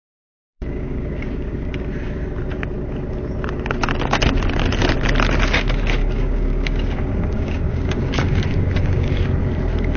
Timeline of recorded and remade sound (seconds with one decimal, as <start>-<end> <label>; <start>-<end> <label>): 0.0-1.7 remade; 1.7-6.0 recorded; 6.0-9.1 remade; 9.1-10.0 recorded